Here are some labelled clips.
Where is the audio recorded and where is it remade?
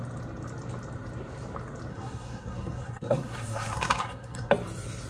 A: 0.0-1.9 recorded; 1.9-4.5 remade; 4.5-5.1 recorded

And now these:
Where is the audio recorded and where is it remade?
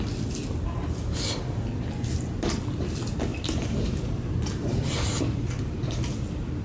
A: 0.0-3.3 recorded; 3.3-6.1 remade; 6.1-6.6 recorded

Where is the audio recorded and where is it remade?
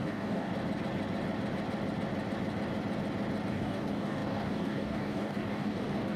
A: 0.0-0.5 remade; 0.5-3.5 recorded; 3.5-6.2 remade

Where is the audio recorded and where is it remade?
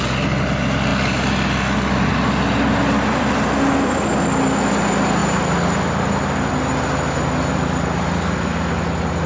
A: 0.0-9.3 recorded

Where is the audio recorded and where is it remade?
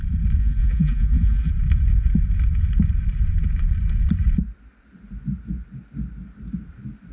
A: 0.0-0.4 recorded; 0.4-1.5 remade; 1.5-7.1 recorded